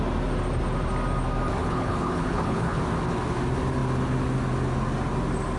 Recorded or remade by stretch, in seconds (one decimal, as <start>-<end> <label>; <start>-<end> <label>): 0.0-1.6 recorded; 1.6-2.8 remade; 2.8-5.6 recorded